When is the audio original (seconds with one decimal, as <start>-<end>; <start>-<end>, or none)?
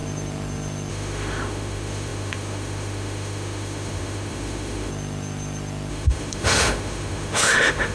0.0-0.9; 4.9-5.9